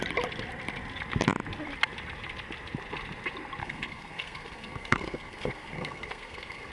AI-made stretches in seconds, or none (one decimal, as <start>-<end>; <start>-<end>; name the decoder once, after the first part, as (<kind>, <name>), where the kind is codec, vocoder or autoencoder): 3.6-6.7 (codec, SNAC)